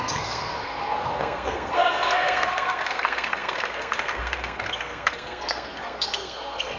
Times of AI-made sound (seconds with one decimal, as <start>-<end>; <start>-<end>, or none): 0.0-6.8